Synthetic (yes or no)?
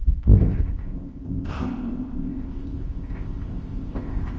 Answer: yes